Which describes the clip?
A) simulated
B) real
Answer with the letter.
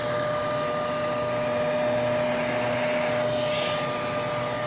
B